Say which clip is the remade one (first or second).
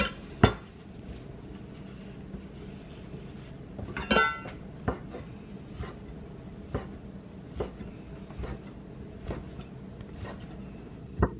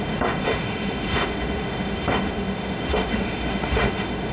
second